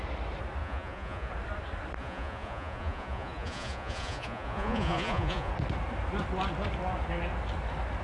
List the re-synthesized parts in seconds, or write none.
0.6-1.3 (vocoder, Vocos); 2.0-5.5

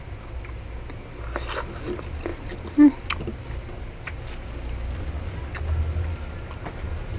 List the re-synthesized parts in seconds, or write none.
none